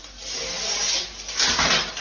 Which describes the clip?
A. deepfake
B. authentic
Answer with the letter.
B